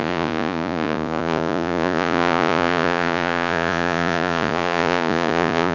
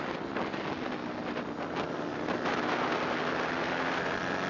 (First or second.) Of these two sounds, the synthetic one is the first